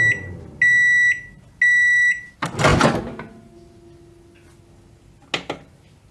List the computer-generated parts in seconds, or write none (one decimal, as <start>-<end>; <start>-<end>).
none